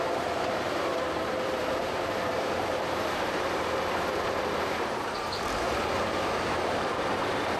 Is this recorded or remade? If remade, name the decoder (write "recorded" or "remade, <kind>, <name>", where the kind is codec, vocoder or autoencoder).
remade, vocoder, BigVGAN v2